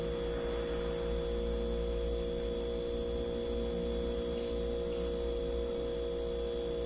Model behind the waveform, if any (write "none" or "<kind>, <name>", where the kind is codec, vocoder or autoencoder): none